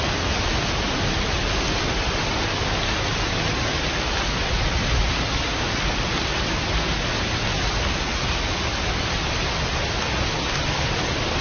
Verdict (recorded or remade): recorded